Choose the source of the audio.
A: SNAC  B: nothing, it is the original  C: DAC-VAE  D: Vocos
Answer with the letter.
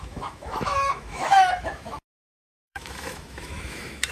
C